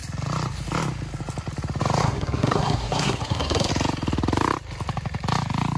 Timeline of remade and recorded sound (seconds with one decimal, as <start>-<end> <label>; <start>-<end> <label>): 0.0-2.0 recorded; 2.0-3.7 remade; 3.7-5.8 recorded